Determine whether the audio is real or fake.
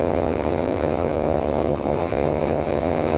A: fake